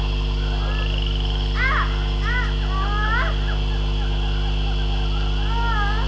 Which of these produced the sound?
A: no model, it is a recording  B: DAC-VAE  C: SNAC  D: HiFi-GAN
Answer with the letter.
A